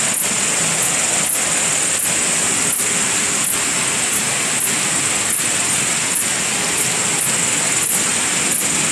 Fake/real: real